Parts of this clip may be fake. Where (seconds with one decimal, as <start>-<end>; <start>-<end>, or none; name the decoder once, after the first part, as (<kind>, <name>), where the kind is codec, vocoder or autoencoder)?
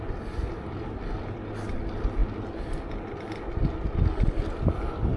none